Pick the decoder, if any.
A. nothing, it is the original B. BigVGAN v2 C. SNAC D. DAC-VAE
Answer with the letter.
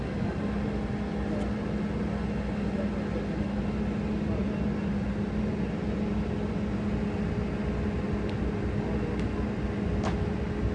A